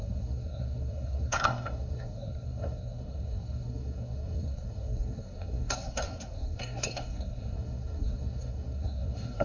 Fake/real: fake